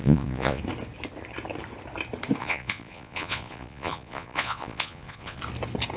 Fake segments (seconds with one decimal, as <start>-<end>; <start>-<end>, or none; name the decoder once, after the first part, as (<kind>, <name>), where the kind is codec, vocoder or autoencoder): 0.0-0.6 (vocoder, Vocos); 2.4-5.4